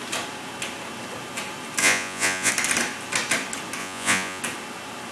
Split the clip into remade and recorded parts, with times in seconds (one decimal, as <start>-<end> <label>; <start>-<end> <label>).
0.0-1.8 recorded; 1.8-2.5 remade; 2.5-3.8 recorded; 3.8-4.4 remade; 4.4-5.1 recorded